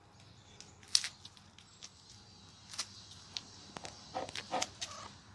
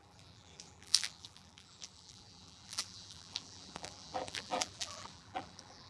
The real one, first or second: first